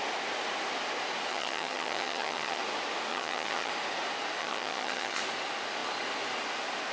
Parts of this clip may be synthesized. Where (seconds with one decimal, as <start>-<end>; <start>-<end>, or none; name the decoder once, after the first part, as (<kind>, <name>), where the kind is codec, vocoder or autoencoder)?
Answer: 1.3-2.6 (vocoder, HiFi-GAN); 3.1-3.7; 4.4-5.2